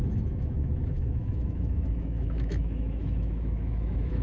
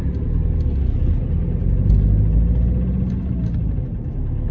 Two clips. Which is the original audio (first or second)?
second